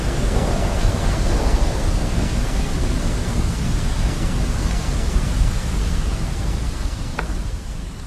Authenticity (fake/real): fake